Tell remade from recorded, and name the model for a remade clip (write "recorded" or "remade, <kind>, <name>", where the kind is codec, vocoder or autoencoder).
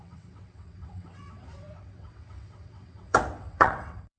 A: remade, vocoder, WaveNeXt